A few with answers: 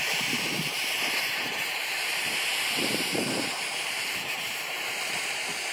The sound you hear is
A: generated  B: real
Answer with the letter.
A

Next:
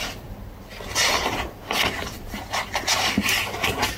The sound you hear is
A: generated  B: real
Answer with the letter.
A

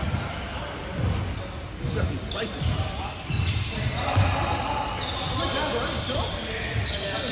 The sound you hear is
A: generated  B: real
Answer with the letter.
B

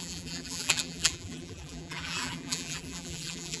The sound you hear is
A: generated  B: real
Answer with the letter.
A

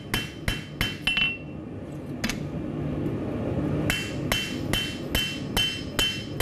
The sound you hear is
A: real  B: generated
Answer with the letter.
A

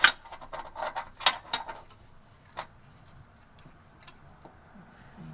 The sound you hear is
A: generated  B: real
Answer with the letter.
B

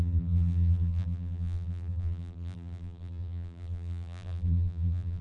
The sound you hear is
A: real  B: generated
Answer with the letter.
B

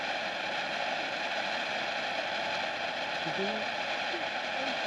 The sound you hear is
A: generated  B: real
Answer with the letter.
B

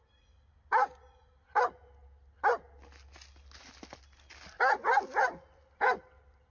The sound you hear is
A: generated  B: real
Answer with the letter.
B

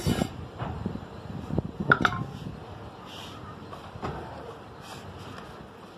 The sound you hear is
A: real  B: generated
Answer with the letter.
A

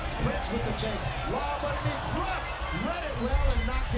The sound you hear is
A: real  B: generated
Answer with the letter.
A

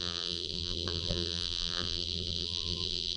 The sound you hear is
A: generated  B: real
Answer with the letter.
A